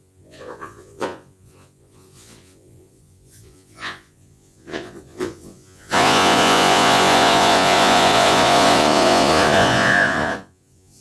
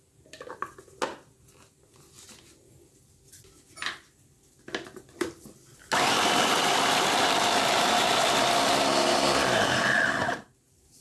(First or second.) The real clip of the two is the second